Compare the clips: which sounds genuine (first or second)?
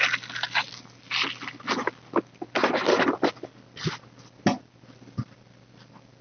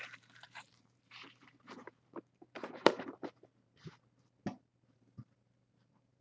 first